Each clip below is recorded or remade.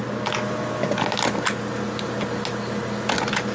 recorded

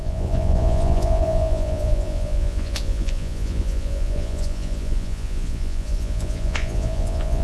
remade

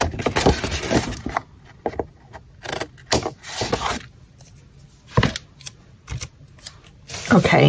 recorded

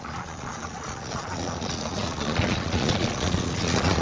remade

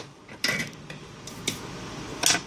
recorded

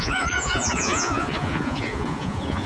remade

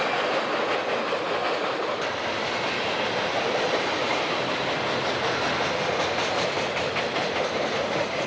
recorded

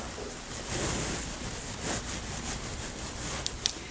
recorded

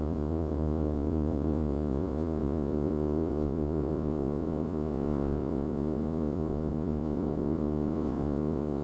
remade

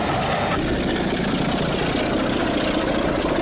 recorded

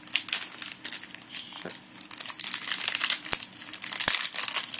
recorded